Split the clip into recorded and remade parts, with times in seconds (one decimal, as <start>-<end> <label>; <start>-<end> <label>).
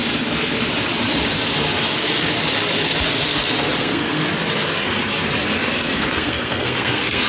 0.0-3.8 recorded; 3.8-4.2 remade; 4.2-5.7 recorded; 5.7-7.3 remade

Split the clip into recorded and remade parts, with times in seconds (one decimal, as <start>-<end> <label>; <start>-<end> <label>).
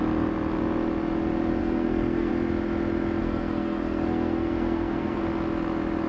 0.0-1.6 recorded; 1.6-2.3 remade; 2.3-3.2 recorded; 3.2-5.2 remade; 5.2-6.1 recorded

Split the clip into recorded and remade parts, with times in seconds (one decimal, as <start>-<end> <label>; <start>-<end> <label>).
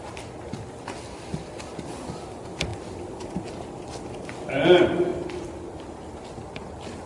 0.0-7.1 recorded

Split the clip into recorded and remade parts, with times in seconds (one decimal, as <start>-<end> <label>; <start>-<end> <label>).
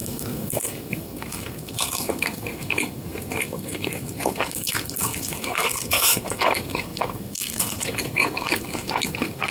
0.0-9.5 remade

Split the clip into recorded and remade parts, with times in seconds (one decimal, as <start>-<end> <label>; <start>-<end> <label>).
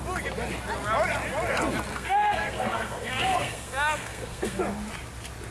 0.0-1.9 recorded; 1.9-4.6 remade; 4.6-5.5 recorded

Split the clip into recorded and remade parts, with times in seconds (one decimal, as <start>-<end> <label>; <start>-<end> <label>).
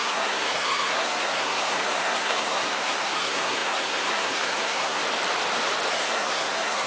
0.0-5.0 remade; 5.0-5.9 recorded; 5.9-6.9 remade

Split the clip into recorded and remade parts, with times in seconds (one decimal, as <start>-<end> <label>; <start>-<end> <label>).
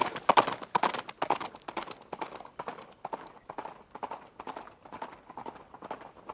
0.0-6.3 recorded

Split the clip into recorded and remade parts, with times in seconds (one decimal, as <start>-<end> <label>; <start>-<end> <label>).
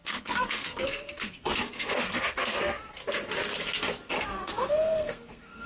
0.0-3.0 remade; 3.0-4.2 recorded; 4.2-5.7 remade